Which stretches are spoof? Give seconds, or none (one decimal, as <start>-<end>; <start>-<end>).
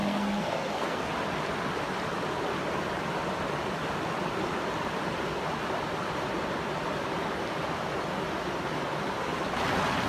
0.0-1.1